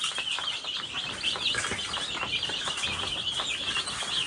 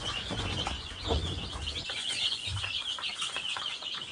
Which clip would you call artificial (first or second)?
second